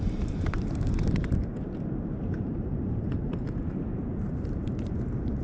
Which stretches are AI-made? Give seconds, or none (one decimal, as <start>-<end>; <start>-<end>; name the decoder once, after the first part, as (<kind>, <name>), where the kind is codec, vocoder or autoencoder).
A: 0.0-1.5 (vocoder, BigVGAN v2); 2.4-5.4